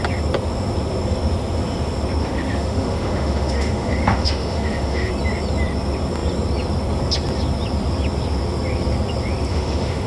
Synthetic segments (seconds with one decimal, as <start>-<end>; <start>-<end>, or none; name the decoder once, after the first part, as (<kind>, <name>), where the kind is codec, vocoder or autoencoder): 2.2-5.1 (autoencoder, DAC-VAE); 9.5-10.1